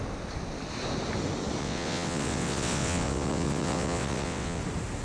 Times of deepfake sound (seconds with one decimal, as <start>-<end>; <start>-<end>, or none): 1.6-4.6